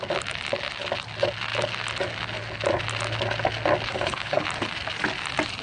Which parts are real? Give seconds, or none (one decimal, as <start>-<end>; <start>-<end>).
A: 0.0-3.9; 4.4-5.6